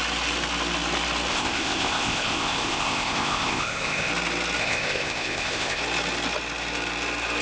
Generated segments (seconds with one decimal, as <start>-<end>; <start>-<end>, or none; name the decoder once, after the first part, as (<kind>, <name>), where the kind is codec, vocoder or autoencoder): 1.3-4.1 (codec, ZipCodec); 4.6-5.8

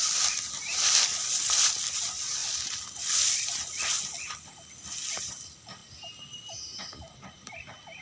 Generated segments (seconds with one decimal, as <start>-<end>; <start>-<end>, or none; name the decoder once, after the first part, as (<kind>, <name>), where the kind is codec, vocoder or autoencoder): 0.0-2.4 (vocoder, BigVGAN v2); 3.2-8.0

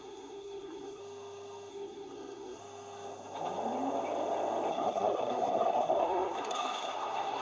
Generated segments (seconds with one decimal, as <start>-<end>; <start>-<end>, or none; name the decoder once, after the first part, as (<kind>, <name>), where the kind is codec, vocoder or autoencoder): 0.0-1.0 (codec, SNAC); 1.7-2.6; 4.7-7.4